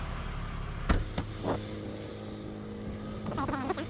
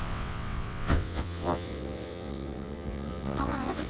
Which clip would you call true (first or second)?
first